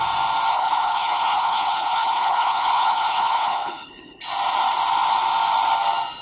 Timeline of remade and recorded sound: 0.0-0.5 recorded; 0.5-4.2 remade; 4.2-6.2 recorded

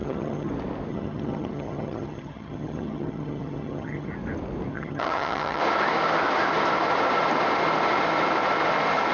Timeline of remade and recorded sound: 0.0-0.5 remade; 0.5-0.9 recorded; 0.9-4.1 remade; 4.1-4.7 recorded; 4.7-5.6 remade; 5.6-9.1 recorded

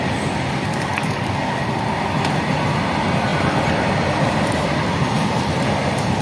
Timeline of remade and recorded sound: 0.0-0.7 recorded; 0.7-1.6 remade; 1.6-6.2 recorded

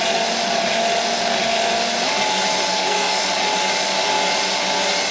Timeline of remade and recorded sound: 0.0-2.7 recorded; 2.7-3.3 remade; 3.3-5.1 recorded

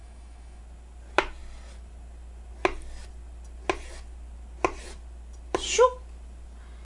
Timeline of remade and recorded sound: 0.0-0.6 remade; 0.6-6.8 recorded

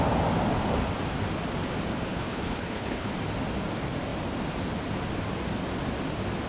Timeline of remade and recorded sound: 0.0-2.1 recorded; 2.1-3.1 remade; 3.1-6.5 recorded